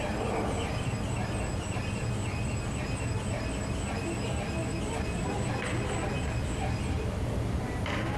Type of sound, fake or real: real